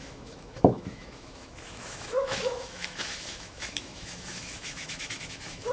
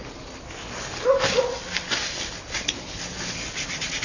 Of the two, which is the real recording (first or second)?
second